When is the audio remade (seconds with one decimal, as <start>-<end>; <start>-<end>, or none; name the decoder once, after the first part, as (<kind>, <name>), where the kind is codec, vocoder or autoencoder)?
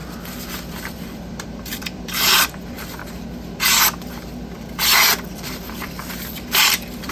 0.5-3.0 (vocoder, BigVGAN v2); 5.3-7.1